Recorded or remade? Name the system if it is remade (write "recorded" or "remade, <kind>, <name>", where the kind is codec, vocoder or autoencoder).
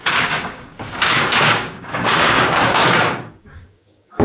remade, codec, DAC